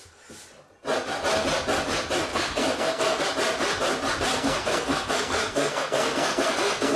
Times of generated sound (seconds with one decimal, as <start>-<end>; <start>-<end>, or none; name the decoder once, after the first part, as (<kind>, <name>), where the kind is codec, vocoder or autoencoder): 2.3-3.2 (codec, SNAC); 4.3-7.0